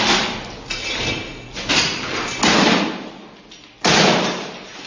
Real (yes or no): yes